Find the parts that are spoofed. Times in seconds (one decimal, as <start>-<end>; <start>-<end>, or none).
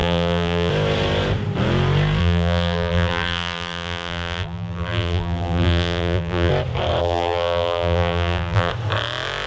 0.0-0.7; 2.2-6.5; 7.0-8.7